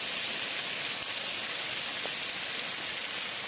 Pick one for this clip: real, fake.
real